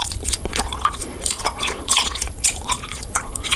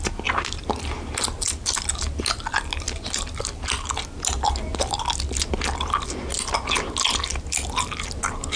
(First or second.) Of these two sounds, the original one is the second